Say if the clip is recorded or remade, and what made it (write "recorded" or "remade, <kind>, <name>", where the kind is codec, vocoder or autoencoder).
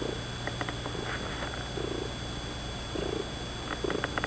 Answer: recorded